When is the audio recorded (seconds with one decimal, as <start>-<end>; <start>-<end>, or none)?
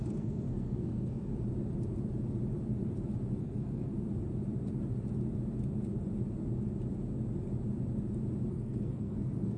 1.3-3.4; 3.9-8.5